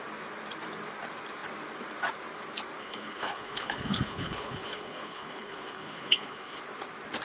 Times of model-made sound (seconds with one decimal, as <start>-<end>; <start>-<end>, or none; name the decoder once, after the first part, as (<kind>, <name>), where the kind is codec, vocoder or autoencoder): 2.8-6.6 (codec, HILCodec)